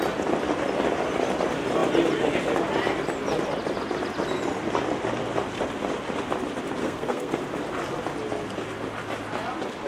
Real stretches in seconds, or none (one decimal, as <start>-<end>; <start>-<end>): 0.0-6.8; 7.4-9.9